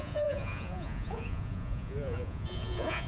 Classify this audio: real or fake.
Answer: fake